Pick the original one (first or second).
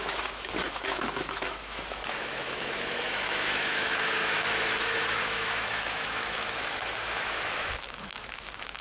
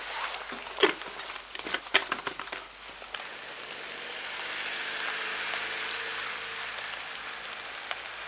second